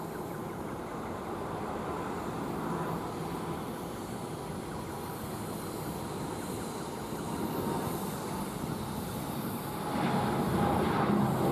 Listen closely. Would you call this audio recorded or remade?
recorded